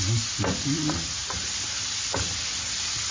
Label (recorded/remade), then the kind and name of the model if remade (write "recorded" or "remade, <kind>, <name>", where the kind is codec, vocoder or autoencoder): recorded